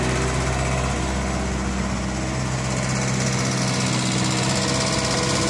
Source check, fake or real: real